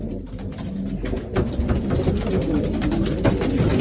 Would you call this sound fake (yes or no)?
no